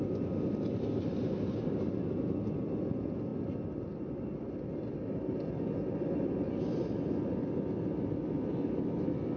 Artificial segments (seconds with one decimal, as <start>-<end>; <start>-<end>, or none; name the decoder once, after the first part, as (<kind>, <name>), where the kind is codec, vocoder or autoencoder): none